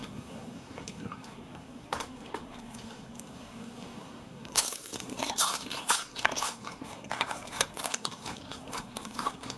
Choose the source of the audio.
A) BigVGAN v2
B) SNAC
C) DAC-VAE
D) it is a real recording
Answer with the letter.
B